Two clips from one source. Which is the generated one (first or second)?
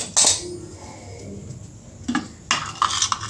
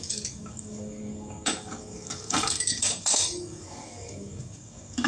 second